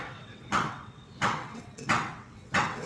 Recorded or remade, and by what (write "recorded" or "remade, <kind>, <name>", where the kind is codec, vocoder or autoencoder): remade, vocoder, WaveNeXt